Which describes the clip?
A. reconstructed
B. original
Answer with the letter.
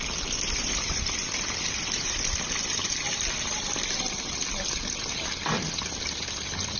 A